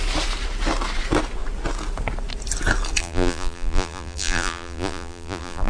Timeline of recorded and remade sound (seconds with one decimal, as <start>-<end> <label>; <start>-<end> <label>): 0.0-3.0 recorded; 3.0-5.7 remade